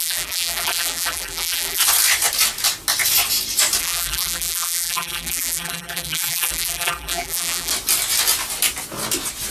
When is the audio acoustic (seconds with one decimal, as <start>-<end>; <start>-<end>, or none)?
1.8-3.8; 7.7-9.5